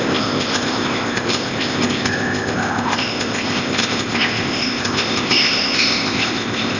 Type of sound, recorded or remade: remade